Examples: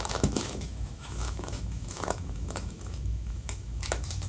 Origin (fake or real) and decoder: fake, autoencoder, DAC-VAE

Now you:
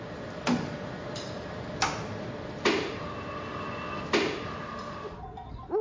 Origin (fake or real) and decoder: real